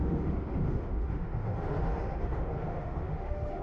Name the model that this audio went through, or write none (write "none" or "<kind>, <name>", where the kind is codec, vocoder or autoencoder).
autoencoder, DAC-VAE